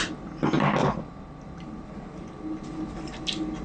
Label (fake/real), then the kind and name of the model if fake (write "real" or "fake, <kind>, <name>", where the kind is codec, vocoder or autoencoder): real